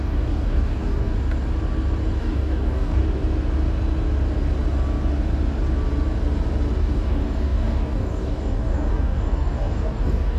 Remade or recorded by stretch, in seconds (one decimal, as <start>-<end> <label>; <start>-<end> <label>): 0.0-1.1 remade; 1.1-2.2 recorded; 2.2-3.0 remade; 3.0-6.8 recorded; 6.8-10.4 remade